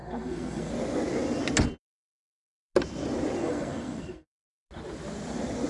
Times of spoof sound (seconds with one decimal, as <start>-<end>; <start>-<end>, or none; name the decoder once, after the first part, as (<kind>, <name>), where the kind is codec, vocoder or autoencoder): 0.0-0.7 (codec, SNAC); 3.4-4.5